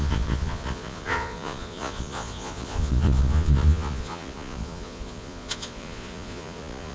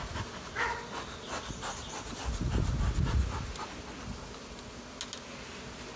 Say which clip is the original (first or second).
second